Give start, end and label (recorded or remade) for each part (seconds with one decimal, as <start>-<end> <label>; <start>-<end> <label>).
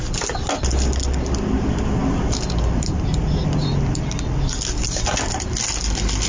0.0-6.3 recorded